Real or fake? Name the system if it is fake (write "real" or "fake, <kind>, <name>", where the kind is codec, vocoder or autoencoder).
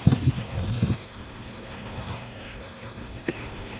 fake, codec, SNAC